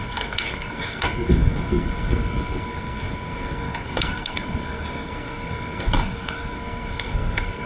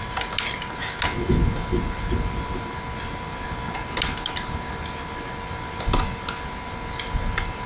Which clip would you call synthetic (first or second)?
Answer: first